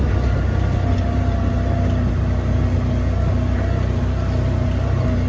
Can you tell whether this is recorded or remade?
recorded